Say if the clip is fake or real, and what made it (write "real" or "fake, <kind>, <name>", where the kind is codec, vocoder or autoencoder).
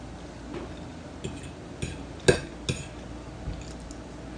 real